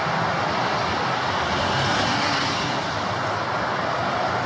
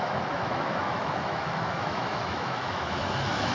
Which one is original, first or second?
first